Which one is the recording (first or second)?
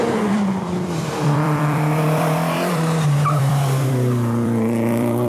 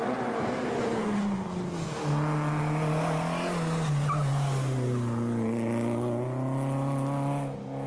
second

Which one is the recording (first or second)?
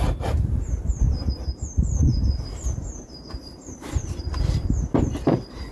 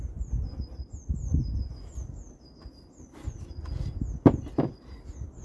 second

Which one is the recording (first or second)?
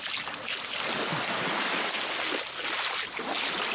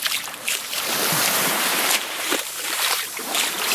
first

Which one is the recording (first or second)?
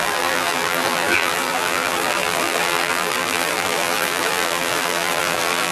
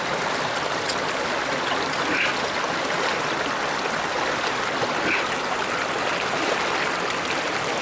second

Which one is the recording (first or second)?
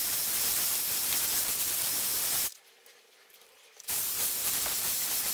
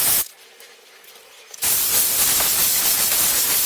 second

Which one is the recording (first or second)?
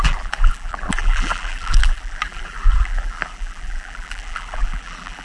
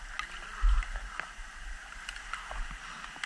second